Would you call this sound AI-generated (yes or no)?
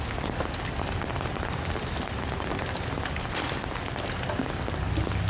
no